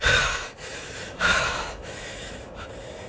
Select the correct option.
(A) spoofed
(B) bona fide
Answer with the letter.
A